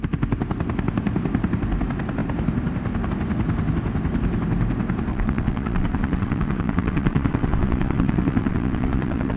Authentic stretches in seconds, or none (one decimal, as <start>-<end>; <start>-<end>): 0.0-5.1